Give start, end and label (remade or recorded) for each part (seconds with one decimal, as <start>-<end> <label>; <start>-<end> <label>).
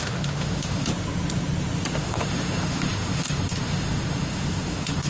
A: 0.0-0.9 remade; 0.9-1.9 recorded; 1.9-5.1 remade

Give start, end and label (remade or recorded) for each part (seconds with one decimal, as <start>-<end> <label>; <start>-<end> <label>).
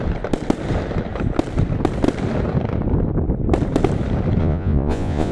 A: 0.0-4.4 recorded; 4.4-5.3 remade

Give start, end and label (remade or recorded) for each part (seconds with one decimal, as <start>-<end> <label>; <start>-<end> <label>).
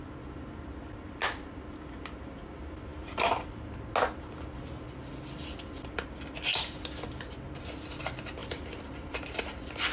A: 0.0-9.9 recorded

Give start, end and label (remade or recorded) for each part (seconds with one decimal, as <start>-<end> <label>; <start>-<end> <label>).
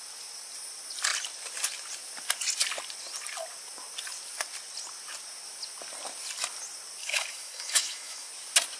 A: 0.0-7.0 recorded; 7.0-8.3 remade; 8.3-8.8 recorded